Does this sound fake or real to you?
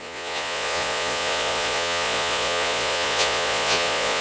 fake